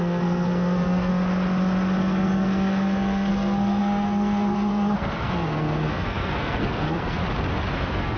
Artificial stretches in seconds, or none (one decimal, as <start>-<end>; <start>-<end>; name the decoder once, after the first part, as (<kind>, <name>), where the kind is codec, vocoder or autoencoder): 0.0-1.1 (codec, SNAC); 2.0-7.2; 7.7-8.2